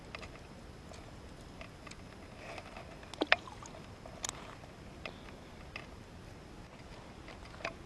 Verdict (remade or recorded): recorded